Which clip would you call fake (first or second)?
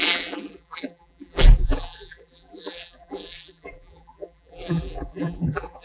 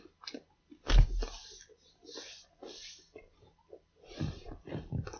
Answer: first